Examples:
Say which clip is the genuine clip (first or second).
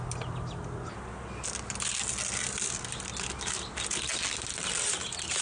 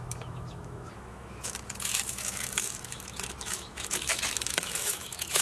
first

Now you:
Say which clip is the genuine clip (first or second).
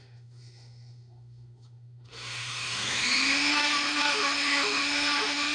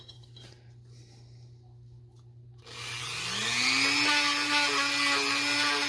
second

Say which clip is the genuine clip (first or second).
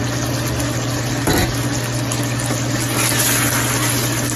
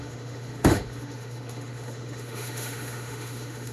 first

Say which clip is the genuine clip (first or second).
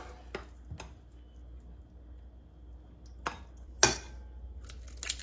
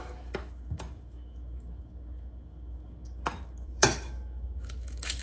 first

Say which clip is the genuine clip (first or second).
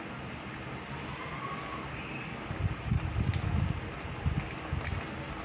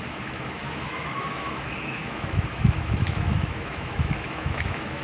first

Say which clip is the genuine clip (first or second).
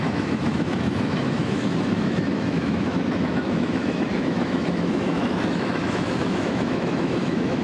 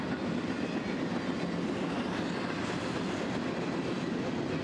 second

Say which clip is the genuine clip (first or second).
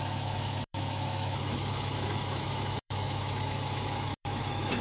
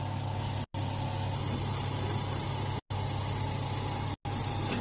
second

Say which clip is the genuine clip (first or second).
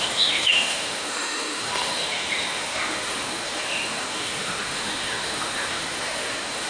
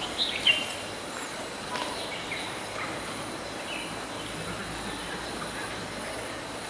second